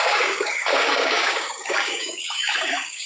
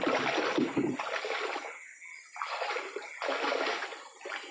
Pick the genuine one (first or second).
second